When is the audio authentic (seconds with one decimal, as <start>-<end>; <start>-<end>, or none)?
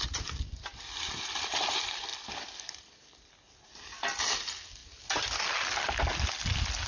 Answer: 0.0-6.9